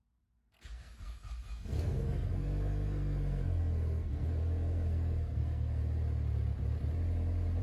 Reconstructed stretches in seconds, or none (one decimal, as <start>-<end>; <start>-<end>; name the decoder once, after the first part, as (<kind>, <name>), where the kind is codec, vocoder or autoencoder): 0.0-5.8 (codec, SNAC)